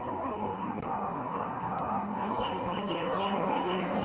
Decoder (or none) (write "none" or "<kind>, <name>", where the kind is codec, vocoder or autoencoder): codec, SNAC